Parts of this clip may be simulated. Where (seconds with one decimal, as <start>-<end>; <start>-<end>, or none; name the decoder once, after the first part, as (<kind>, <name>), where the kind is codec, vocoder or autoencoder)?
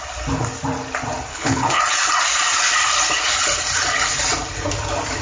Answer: 1.3-1.8 (codec, HILCodec)